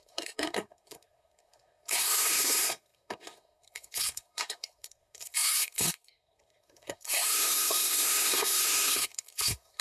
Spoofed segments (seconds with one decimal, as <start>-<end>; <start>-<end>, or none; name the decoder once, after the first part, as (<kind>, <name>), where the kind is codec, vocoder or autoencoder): 0.0-9.8 (codec, SNAC)